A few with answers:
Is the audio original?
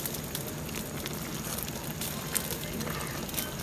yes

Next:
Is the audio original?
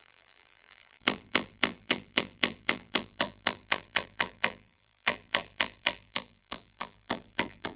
no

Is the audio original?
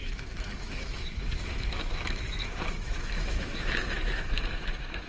no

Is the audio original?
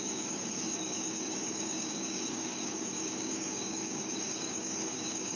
no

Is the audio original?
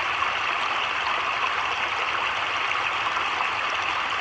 yes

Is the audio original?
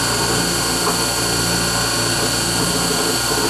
yes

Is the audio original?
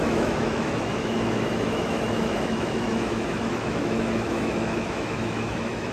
no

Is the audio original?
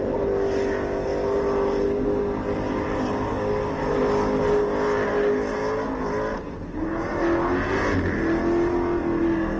yes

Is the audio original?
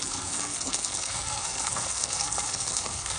no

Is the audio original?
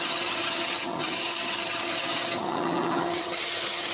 no